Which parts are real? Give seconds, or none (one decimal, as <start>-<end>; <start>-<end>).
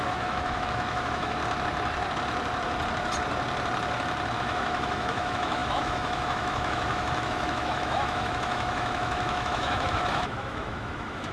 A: 1.4-4.4